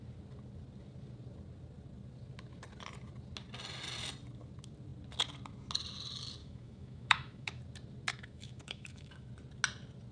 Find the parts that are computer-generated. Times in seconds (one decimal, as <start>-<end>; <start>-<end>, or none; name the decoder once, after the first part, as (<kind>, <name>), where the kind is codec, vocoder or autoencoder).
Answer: 6.4-7.6 (autoencoder, DAC-VAE); 8.1-9.3